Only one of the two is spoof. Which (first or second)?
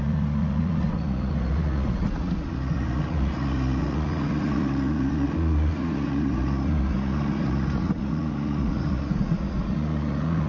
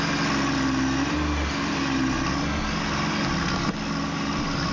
first